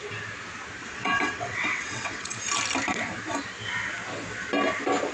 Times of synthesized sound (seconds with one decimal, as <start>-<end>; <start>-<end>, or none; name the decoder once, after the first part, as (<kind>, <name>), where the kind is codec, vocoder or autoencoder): 0.8-2.4 (vocoder, WaveNeXt)